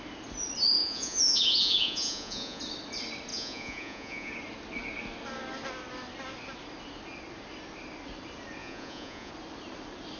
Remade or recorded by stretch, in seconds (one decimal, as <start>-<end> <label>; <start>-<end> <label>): 0.0-0.8 recorded; 0.8-2.6 remade; 2.6-3.3 recorded; 3.3-4.3 remade; 4.3-8.6 recorded; 8.6-9.3 remade; 9.3-10.2 recorded